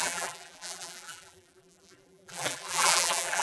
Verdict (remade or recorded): remade